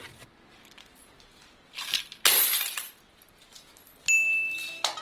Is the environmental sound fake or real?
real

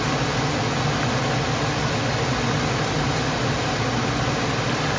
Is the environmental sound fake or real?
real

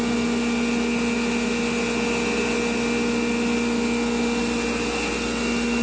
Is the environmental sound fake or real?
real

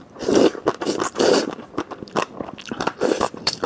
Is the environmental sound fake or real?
fake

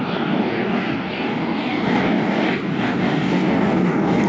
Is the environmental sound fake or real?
fake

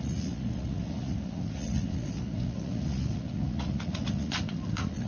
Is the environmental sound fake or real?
fake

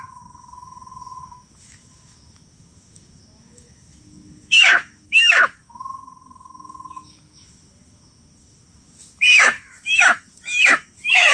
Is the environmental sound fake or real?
fake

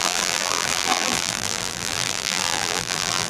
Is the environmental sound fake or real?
fake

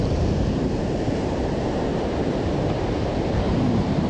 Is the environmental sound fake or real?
fake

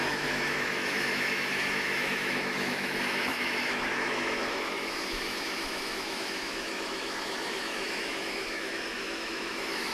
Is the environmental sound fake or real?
fake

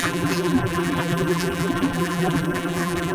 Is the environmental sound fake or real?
fake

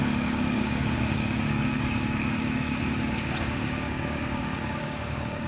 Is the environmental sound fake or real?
fake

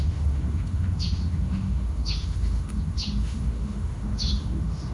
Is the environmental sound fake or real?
fake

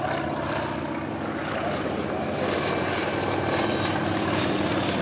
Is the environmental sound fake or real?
real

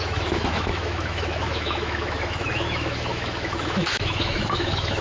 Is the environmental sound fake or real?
fake